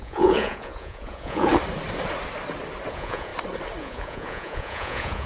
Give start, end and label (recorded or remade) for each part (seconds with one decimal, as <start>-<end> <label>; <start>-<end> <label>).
0.0-1.5 remade; 1.5-2.9 recorded; 2.9-3.3 remade; 3.3-3.8 recorded; 3.8-5.3 remade